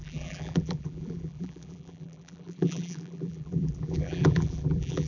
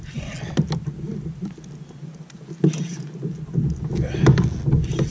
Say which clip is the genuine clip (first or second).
second